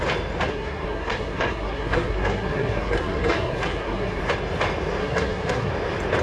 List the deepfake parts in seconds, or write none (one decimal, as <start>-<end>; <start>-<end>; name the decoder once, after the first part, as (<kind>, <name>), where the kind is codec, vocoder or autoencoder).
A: 0.5-4.2 (codec, SNAC); 5.0-5.7